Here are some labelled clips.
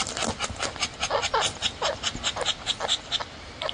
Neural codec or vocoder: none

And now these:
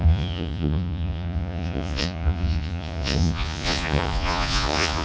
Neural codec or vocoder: vocoder, Vocos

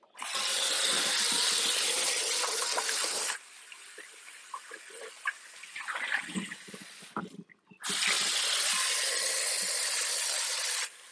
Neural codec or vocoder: none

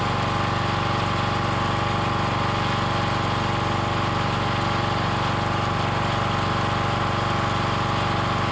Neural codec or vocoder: none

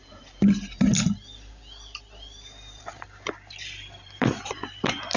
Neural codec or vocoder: vocoder, BigVGAN v2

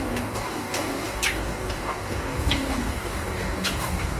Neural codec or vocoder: codec, DAC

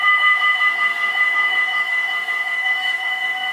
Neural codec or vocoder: autoencoder, DAC-VAE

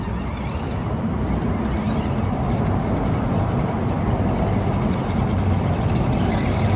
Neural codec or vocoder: none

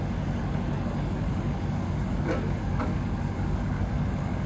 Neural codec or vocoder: codec, DAC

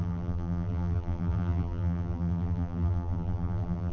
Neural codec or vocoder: vocoder, BigVGAN v2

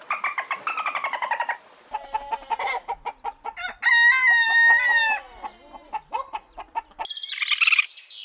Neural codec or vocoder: none